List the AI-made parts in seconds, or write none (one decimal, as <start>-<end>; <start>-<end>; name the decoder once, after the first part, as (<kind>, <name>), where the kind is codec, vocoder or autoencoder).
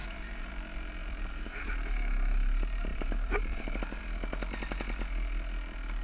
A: 0.0-0.5 (vocoder, BigVGAN v2); 1.0-1.7; 2.9-4.0